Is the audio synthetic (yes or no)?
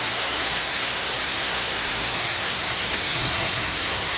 yes